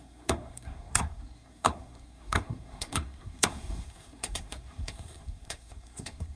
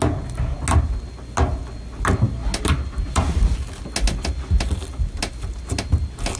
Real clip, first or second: second